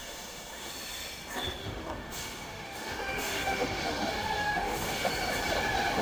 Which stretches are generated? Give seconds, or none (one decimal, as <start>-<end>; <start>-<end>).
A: 0.0-0.7; 1.6-5.1